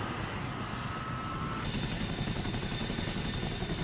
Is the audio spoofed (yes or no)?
no